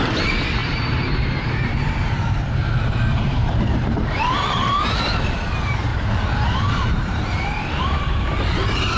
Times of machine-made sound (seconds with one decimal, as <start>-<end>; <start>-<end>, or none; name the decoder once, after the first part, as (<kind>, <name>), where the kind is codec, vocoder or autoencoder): 0.0-9.0 (vocoder, BigVGAN v2)